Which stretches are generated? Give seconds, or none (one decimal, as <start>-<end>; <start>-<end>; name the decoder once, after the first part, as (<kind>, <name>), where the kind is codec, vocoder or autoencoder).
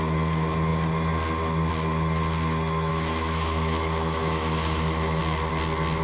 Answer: 2.9-5.2 (autoencoder, DAC-VAE)